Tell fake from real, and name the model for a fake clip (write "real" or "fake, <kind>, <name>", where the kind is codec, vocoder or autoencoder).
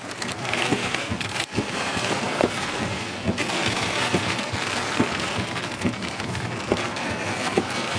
fake, codec, SNAC